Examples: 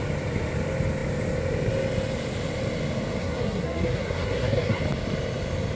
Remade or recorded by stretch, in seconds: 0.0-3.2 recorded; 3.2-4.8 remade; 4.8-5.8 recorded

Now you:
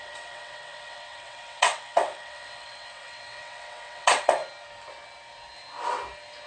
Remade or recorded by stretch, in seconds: 0.0-4.4 remade; 4.4-6.5 recorded

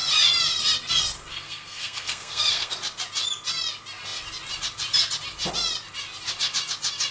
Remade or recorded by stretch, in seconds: 0.0-1.3 recorded; 1.3-2.7 remade; 2.7-7.1 recorded